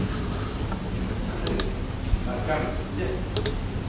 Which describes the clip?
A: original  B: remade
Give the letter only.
A